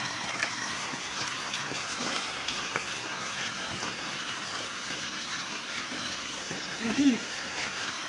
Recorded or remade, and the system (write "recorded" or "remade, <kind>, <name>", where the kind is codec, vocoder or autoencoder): remade, codec, SNAC